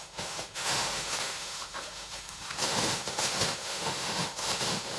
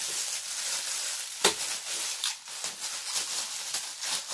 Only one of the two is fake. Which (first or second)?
first